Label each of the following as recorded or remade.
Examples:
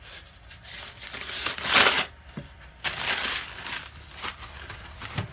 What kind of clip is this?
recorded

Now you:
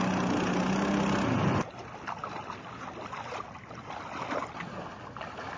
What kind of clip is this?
recorded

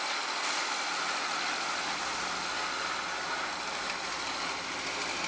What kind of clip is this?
recorded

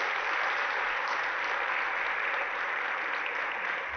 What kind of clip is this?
recorded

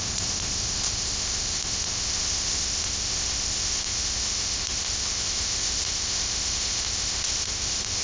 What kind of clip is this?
remade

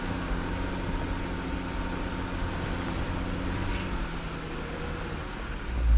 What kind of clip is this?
recorded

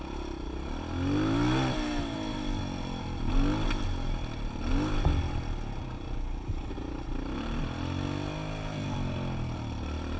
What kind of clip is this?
recorded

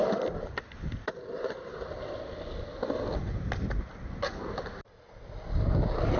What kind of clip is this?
recorded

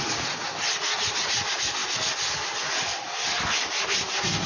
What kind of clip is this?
recorded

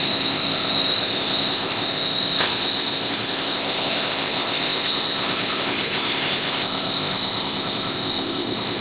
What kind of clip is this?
remade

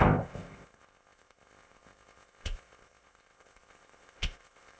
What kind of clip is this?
remade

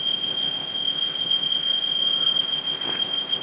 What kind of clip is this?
remade